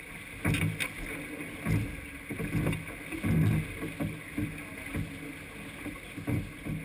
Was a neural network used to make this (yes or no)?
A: no